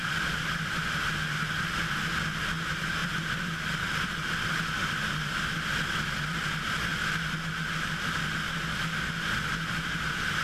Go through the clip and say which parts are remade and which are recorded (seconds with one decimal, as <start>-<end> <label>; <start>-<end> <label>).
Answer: 0.0-0.8 remade; 0.8-3.0 recorded; 3.0-5.4 remade; 5.4-10.4 recorded